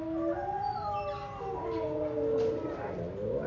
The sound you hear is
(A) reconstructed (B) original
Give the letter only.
B